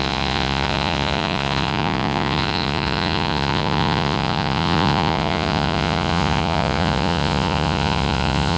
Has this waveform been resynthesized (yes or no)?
yes